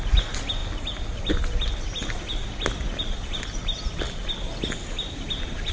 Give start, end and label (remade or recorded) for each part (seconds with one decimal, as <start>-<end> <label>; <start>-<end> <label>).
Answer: 0.0-5.7 recorded